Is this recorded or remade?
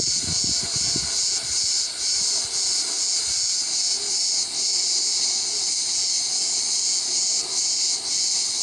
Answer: recorded